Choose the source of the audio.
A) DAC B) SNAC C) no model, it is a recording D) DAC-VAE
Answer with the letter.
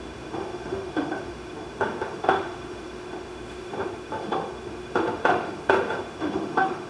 D